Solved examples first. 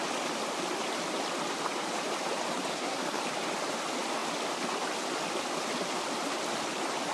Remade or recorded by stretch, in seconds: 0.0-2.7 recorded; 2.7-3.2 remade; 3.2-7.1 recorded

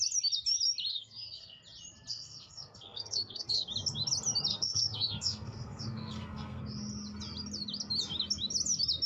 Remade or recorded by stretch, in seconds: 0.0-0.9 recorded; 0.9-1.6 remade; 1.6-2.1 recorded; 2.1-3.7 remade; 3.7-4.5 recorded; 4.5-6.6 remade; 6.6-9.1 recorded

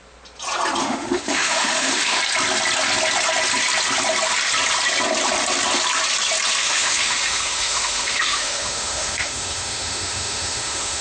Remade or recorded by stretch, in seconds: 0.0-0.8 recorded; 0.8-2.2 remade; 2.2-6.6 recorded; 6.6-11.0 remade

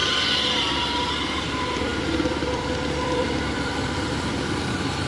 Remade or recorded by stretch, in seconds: 0.0-1.1 recorded; 1.1-5.1 remade